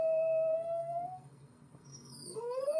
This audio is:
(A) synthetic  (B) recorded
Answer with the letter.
A